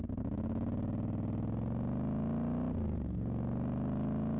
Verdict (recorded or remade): recorded